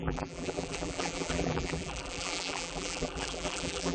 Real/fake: fake